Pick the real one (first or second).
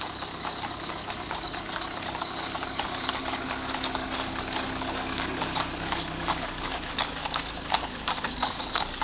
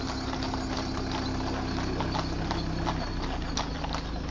second